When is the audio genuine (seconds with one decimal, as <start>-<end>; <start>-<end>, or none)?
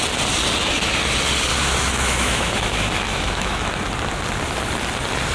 0.0-1.5; 3.7-5.3